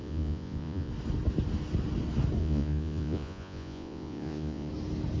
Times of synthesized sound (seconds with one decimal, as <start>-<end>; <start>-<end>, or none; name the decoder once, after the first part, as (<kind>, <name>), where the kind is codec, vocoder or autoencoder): 0.0-0.9 (vocoder, Vocos); 2.4-4.7